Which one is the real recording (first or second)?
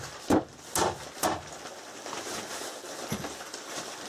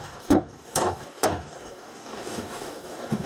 first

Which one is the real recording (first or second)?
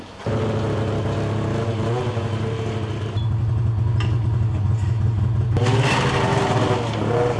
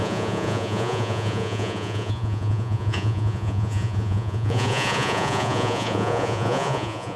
first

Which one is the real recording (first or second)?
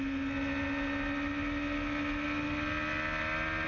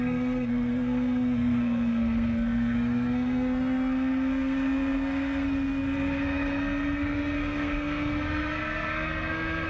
first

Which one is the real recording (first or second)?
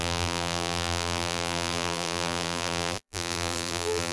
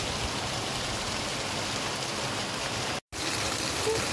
second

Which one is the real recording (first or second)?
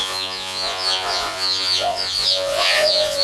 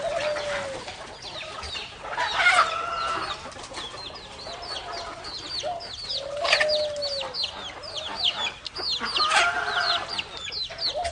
second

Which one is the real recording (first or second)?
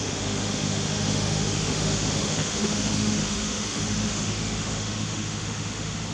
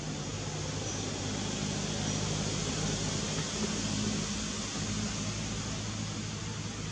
second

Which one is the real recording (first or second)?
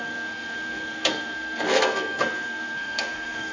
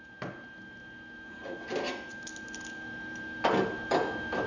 second